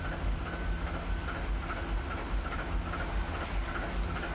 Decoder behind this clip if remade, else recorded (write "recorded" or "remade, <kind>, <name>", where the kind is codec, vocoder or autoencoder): recorded